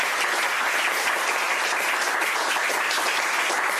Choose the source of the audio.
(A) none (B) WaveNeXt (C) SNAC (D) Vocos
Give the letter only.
A